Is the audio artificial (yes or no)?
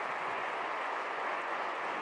yes